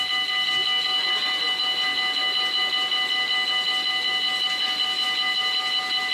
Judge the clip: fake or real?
real